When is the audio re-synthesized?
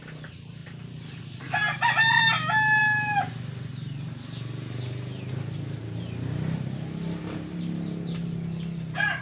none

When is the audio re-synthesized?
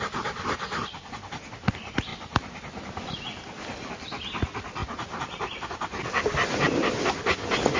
2.1-3.2 (vocoder, BigVGAN v2); 4.8-6.0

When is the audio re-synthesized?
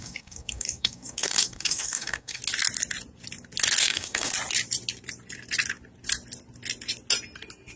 0.0-2.4 (codec, DAC); 3.8-4.3